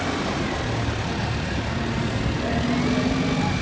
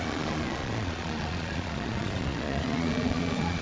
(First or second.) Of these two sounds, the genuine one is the first